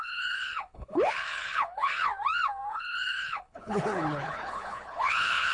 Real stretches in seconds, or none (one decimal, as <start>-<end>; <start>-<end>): 2.1-2.7